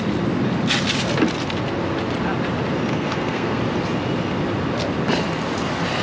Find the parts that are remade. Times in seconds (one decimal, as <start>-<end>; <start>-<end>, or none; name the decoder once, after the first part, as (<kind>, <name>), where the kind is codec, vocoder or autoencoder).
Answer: 2.9-3.6 (codec, SNAC)